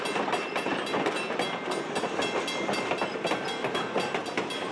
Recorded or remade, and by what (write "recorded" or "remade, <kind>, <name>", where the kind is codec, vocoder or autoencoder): recorded